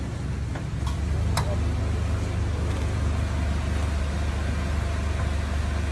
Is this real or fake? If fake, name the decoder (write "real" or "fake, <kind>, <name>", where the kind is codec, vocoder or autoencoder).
real